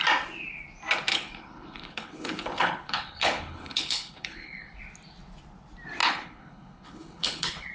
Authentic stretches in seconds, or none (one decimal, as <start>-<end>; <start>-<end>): 0.0-1.1; 4.8-6.0

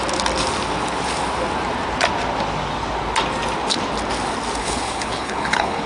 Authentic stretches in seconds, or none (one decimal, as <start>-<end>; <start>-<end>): 0.0-4.6

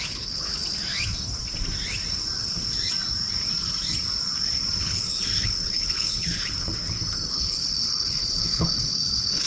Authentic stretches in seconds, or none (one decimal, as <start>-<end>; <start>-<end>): 0.6-4.8; 6.8-7.3

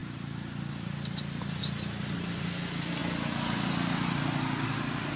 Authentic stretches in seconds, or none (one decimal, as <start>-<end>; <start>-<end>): 0.0-5.2

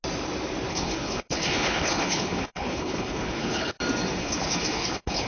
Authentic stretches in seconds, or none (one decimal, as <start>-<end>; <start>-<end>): 0.0-0.7; 3.8-4.2

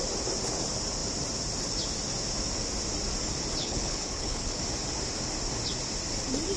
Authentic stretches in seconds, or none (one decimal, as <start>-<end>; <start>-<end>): 0.0-3.6; 4.6-6.6